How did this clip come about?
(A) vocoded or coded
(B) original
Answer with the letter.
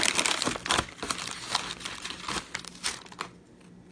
B